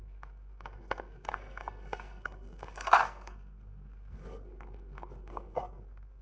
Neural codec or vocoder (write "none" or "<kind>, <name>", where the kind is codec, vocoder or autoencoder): codec, SNAC